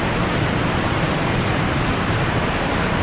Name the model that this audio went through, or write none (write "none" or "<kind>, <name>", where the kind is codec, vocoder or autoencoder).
vocoder, BigVGAN v2